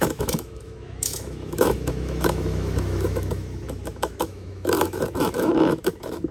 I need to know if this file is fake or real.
fake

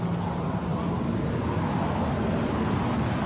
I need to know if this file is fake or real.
real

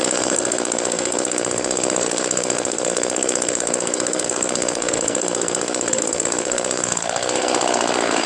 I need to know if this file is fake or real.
fake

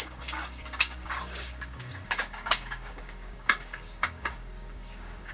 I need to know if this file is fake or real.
fake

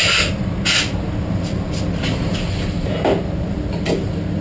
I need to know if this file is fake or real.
real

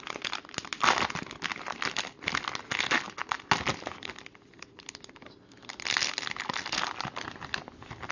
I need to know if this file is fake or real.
real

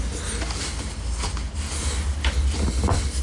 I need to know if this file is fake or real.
real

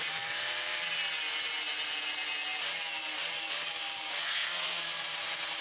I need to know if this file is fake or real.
real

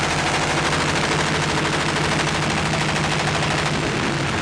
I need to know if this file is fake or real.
real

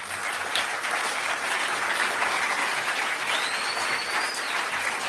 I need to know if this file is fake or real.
real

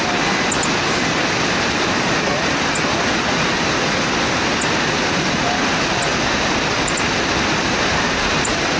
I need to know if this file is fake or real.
real